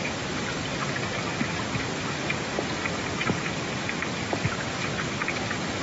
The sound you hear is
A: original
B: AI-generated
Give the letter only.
A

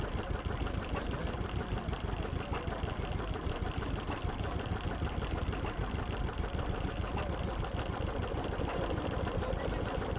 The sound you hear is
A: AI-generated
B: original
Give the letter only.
B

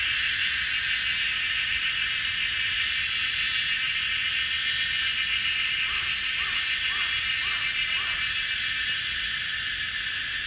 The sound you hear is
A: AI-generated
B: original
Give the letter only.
B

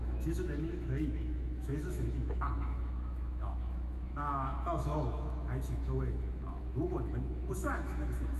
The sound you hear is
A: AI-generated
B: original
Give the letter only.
A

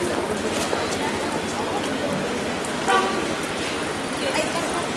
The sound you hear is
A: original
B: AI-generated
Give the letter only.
A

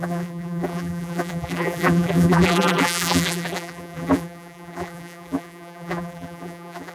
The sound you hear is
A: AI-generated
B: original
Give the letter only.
A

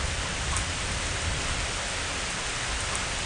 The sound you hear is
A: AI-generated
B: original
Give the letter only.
B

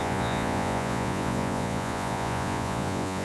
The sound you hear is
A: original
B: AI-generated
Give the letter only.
B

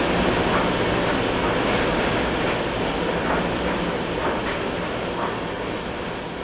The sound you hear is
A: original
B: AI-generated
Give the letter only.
A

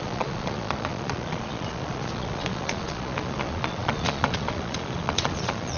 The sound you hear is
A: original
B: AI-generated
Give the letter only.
B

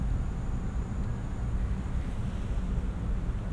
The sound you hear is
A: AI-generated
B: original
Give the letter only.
B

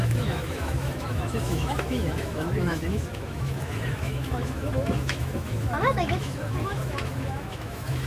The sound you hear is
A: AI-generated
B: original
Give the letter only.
A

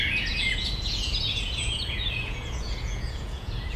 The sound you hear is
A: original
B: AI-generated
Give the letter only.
B